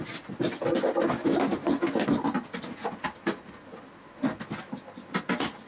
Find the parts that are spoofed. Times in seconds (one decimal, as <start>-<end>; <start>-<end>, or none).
none